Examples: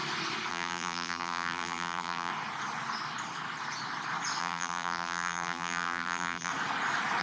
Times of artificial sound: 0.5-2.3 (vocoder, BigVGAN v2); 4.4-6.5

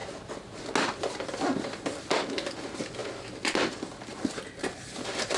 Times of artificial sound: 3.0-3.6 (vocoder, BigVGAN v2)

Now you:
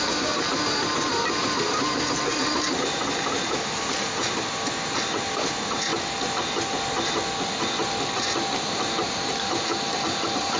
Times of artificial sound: 0.0-5.9 (vocoder, BigVGAN v2); 8.6-10.6

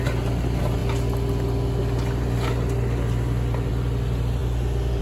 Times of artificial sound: none